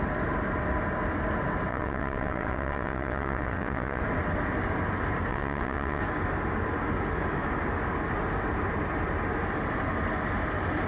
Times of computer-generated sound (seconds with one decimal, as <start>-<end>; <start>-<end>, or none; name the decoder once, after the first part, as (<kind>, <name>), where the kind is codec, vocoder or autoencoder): 1.7-4.0 (vocoder, WaveNeXt); 5.3-6.0